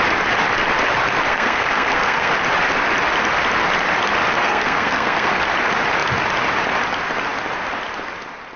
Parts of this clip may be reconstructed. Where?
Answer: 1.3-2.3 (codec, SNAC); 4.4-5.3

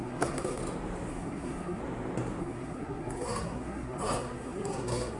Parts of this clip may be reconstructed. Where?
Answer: 0.0-0.6 (codec, SNAC); 1.1-1.8; 2.4-5.2

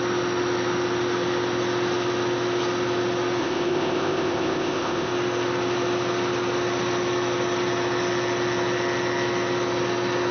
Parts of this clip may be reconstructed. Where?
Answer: 3.4-5.1 (codec, ZipCodec)

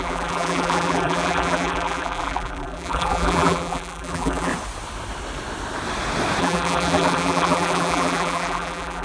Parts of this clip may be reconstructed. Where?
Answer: 0.0-4.5 (vocoder, BigVGAN v2); 6.4-9.0

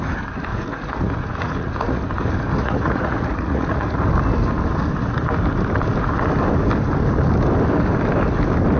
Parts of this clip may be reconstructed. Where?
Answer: 0.5-2.0 (vocoder, Vocos); 2.6-4.0

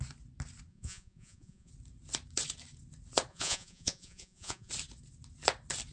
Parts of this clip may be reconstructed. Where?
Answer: 0.7-1.7 (vocoder, Vocos); 3.3-4.7